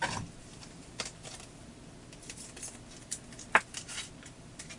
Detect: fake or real real